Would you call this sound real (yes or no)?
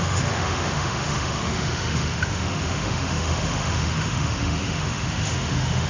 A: no